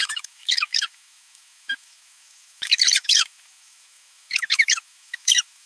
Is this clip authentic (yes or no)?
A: no